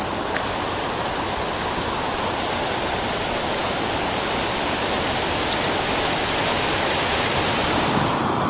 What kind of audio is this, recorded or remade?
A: recorded